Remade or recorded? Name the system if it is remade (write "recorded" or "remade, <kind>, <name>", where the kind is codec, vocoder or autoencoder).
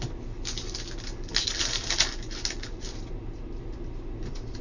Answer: recorded